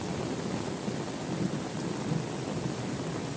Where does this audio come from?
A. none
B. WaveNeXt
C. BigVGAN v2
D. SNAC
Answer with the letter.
A